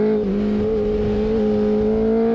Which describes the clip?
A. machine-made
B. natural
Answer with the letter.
B